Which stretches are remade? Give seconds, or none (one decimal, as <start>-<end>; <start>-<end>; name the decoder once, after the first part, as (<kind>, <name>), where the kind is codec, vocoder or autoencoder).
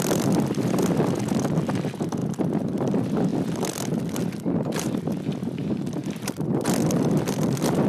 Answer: 0.0-2.2 (vocoder, BigVGAN v2); 2.7-3.3; 4.4-6.0; 6.9-7.9